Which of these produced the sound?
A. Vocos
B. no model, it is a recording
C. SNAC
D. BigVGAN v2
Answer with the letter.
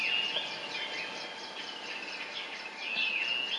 B